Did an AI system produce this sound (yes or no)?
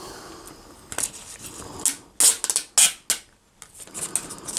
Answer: no